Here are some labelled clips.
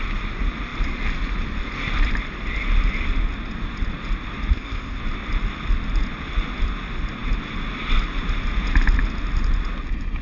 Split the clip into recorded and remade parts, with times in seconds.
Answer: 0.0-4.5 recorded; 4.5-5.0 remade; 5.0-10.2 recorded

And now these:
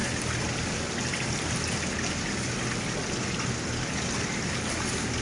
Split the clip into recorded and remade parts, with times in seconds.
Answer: 0.0-5.2 recorded

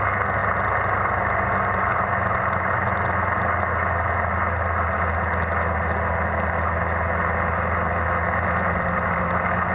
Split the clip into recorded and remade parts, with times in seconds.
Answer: 0.0-9.7 recorded

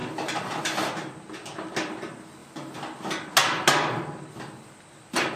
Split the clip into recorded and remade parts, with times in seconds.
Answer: 0.0-5.4 recorded

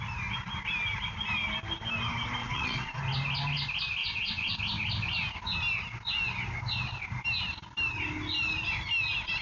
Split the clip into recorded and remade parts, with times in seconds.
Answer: 0.0-2.4 recorded; 2.4-3.0 remade; 3.0-4.0 recorded; 4.0-4.6 remade; 4.6-9.4 recorded